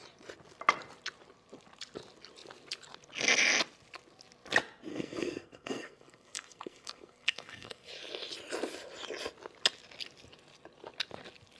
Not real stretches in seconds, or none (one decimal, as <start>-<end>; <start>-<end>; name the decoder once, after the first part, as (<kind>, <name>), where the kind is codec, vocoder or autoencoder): 4.9-7.9 (codec, SNAC)